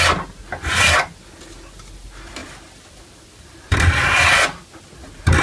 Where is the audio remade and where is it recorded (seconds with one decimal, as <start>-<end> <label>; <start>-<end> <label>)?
0.0-2.4 recorded; 2.4-4.8 remade; 4.8-5.4 recorded